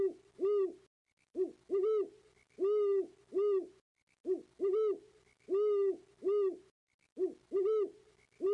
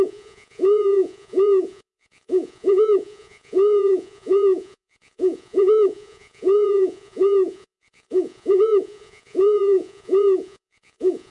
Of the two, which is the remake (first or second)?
second